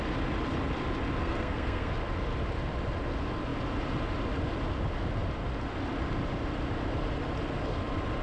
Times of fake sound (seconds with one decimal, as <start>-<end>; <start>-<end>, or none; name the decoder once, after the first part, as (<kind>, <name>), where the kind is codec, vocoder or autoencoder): 1.2-1.9 (codec, SNAC)